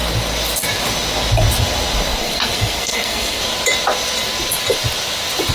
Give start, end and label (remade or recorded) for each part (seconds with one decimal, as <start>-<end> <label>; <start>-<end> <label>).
0.0-2.2 recorded; 2.2-3.4 remade; 3.4-5.5 recorded